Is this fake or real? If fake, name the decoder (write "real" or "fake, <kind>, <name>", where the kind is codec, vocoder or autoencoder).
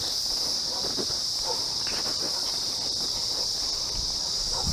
real